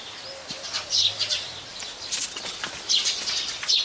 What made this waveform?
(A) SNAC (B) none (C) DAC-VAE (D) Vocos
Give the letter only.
B